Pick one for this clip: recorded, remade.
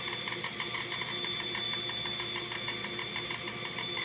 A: recorded